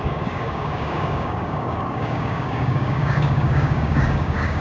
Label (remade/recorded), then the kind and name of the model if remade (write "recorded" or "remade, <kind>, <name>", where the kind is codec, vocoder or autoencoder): remade, codec, DAC